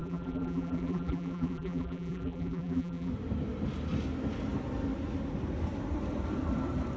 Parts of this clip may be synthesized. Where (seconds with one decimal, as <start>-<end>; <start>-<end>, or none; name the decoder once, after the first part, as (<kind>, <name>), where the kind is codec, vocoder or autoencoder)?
0.0-3.1 (vocoder, BigVGAN v2)